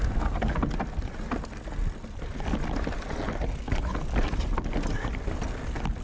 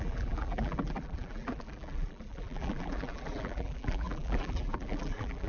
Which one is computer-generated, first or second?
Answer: second